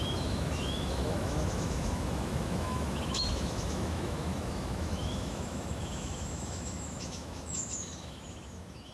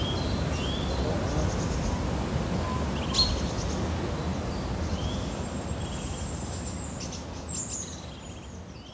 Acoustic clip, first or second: second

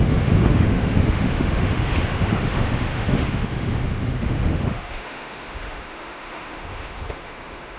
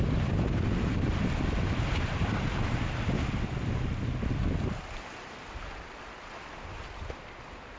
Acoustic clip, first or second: second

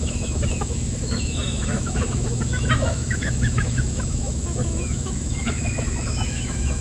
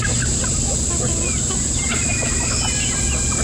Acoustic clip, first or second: second